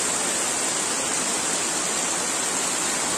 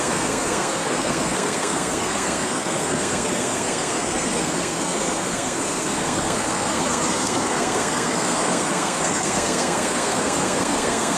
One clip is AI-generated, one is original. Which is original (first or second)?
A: first